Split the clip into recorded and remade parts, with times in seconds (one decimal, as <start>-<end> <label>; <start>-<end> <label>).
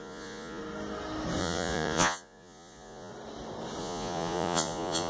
0.0-0.6 remade; 0.6-1.4 recorded; 1.4-3.1 remade; 3.1-3.8 recorded; 3.8-5.1 remade